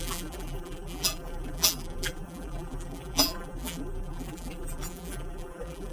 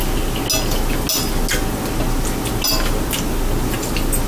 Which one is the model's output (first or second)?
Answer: first